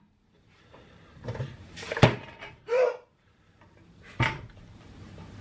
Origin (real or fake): fake